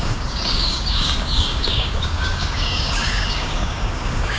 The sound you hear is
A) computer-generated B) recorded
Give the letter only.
A